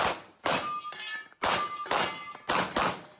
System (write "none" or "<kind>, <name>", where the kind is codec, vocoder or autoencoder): none